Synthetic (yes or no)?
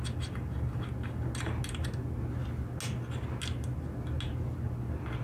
no